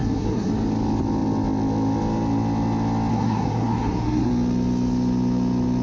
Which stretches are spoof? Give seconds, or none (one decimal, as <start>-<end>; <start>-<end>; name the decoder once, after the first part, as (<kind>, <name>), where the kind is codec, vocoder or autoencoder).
0.0-0.5 (codec, SNAC); 3.1-4.3